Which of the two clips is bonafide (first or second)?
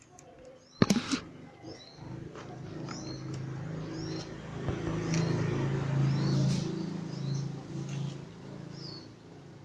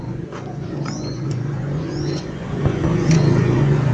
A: first